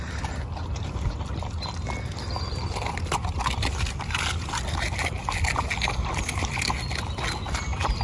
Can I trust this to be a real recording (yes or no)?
yes